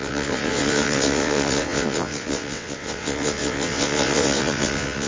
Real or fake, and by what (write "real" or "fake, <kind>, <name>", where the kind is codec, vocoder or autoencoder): fake, vocoder, WaveNeXt